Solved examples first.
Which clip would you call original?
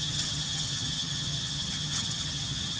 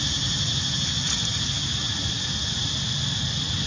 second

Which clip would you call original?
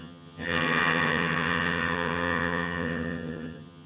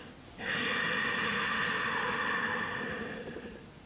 second